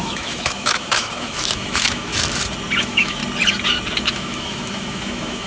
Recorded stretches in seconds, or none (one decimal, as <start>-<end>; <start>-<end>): 2.1-2.8; 3.2-4.1